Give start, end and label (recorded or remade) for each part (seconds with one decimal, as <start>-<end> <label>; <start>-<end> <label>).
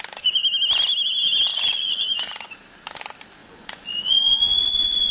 0.0-1.5 recorded; 1.5-2.5 remade; 2.5-3.4 recorded; 3.4-5.1 remade